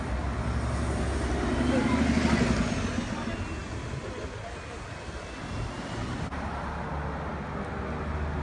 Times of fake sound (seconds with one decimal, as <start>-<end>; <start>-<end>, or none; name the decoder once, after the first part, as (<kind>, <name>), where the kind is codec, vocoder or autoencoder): none